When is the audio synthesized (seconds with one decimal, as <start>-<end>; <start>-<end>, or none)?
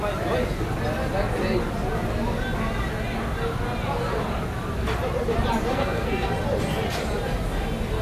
5.7-6.3